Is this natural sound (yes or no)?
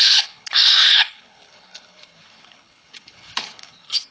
no